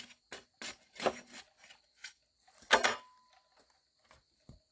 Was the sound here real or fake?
real